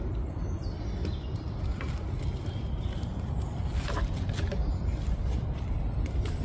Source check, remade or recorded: recorded